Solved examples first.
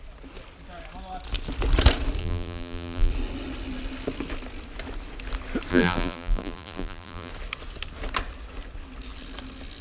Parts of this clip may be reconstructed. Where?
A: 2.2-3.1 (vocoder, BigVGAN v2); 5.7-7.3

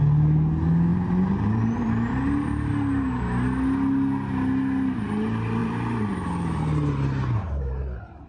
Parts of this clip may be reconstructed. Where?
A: 0.9-2.7 (vocoder, BigVGAN v2); 5.6-6.6

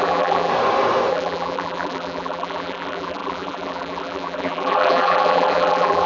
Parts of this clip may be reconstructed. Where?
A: 0.0-0.5 (vocoder, BigVGAN v2); 1.1-6.1